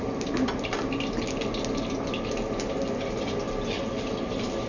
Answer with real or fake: real